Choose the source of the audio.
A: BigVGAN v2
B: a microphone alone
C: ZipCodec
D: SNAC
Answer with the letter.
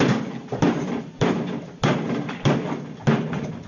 B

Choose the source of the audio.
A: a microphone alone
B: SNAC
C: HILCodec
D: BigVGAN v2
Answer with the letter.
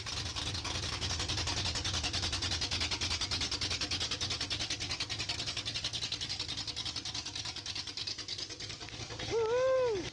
A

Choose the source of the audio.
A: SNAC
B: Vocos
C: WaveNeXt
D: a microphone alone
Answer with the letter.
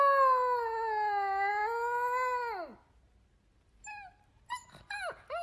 D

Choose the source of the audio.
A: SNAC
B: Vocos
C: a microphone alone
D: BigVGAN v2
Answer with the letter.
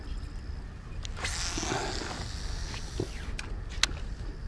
C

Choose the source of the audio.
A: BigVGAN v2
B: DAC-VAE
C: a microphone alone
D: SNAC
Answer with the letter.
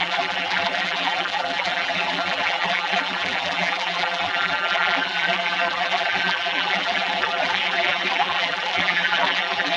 A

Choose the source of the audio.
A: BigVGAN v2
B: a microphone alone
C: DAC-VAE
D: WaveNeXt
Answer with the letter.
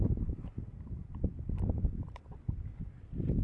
A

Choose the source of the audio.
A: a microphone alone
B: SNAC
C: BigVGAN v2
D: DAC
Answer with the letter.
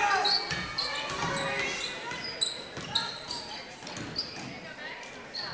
A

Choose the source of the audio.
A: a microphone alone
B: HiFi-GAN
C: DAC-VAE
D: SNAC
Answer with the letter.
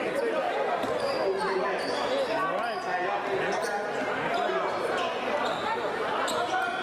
A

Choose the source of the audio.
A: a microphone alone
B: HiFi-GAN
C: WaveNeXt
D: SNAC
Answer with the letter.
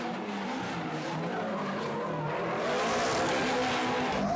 A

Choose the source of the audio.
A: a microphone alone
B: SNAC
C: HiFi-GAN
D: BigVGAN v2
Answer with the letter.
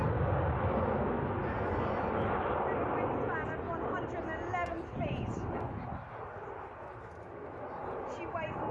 A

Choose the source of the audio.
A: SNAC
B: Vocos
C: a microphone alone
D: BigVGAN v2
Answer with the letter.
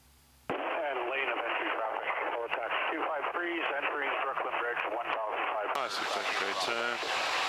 C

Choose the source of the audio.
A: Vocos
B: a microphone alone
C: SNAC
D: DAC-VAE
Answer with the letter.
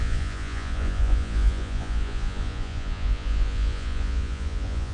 A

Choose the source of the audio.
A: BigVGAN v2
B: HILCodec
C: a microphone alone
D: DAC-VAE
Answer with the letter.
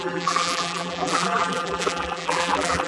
A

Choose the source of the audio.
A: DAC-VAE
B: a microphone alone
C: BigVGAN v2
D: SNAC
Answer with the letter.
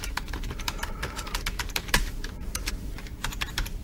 C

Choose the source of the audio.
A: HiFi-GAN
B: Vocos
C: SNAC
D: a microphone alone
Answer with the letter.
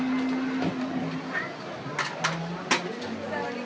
D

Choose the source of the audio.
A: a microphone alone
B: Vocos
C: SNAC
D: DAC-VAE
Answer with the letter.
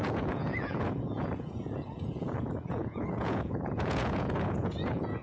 B